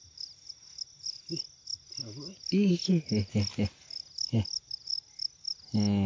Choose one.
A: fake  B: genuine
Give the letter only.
B